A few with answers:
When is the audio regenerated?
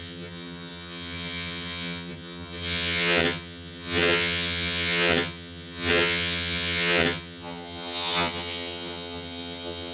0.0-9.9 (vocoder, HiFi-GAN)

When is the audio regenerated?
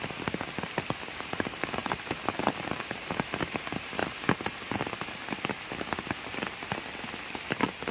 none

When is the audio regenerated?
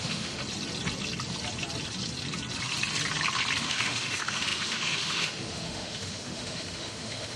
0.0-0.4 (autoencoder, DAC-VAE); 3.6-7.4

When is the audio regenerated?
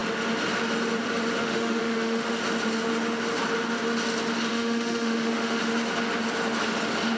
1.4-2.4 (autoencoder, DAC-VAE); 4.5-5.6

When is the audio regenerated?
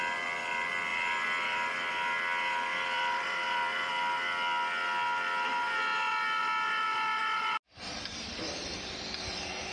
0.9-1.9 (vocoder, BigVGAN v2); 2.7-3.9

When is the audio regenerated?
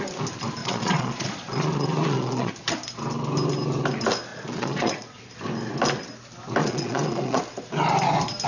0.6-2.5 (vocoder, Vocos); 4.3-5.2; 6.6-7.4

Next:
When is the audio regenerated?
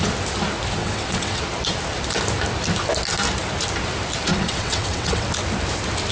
0.8-1.4 (vocoder, WaveNeXt); 4.3-5.3